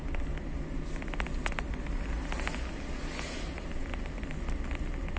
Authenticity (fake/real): real